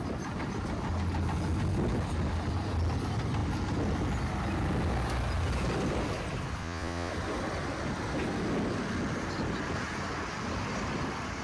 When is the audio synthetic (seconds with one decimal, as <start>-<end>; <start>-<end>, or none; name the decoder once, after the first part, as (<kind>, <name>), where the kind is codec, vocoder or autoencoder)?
6.6-7.1 (vocoder, Vocos)